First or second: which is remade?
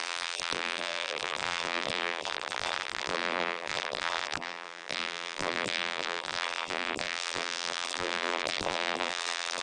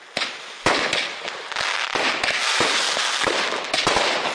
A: first